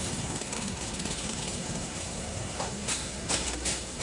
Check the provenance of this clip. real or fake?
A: fake